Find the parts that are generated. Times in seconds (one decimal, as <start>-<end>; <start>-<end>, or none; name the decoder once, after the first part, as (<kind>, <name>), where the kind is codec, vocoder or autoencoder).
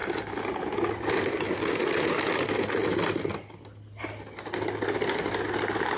none